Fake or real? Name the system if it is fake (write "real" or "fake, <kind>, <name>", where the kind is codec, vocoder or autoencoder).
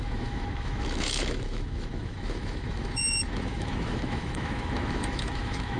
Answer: fake, autoencoder, DAC-VAE